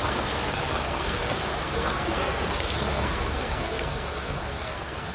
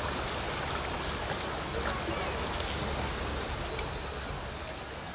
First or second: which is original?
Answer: second